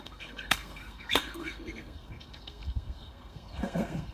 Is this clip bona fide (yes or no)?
no